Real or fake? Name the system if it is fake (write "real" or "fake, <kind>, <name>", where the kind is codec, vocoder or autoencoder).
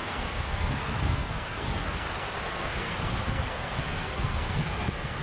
fake, codec, SNAC